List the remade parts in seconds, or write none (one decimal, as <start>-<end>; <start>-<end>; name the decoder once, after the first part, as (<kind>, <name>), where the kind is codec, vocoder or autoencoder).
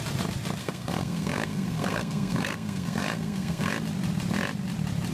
0.6-3.7 (codec, SNAC)